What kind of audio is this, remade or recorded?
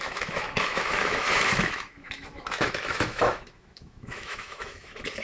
remade